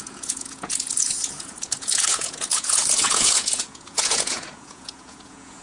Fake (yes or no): yes